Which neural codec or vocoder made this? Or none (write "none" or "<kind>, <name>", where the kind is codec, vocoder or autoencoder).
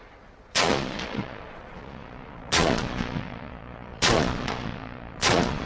vocoder, Vocos